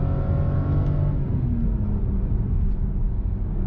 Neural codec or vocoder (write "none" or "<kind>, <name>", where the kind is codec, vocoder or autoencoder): none